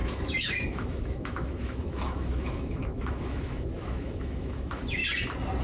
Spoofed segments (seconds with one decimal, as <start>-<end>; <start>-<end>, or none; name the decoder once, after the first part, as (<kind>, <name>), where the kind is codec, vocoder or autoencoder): 0.0-5.0 (autoencoder, DAC-VAE)